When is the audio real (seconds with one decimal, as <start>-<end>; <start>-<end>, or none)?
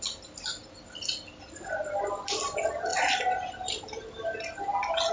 0.0-5.1